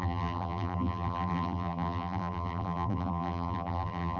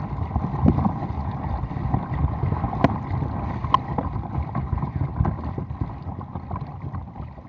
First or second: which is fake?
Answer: first